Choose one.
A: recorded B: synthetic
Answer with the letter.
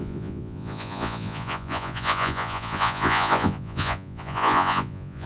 B